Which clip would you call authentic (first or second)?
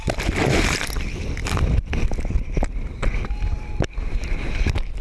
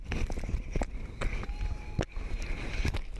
second